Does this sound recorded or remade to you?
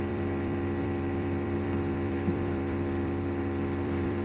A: remade